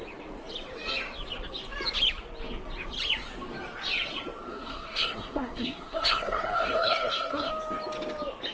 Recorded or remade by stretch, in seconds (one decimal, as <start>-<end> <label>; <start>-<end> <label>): 0.0-4.5 recorded; 4.5-7.5 remade; 7.5-8.5 recorded

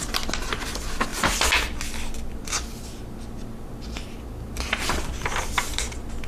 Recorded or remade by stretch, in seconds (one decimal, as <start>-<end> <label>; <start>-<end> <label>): 0.0-6.3 recorded

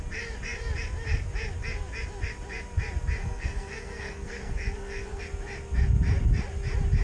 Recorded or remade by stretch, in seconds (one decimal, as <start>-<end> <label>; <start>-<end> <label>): 0.0-3.2 recorded; 3.2-5.2 remade; 5.2-7.0 recorded

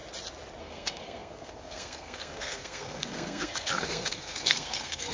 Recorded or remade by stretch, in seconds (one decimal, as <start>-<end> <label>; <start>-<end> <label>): 0.0-0.6 recorded; 0.6-5.1 remade

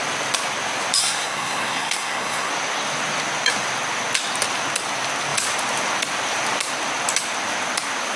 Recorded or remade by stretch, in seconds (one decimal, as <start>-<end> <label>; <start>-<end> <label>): 0.0-1.0 recorded; 1.0-2.5 remade; 2.5-8.2 recorded

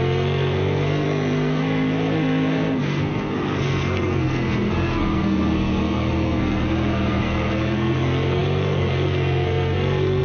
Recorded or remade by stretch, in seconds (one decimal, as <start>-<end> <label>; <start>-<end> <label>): 0.0-10.2 remade

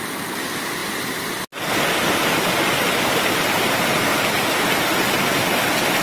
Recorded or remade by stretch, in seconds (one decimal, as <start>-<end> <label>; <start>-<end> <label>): 0.0-6.0 recorded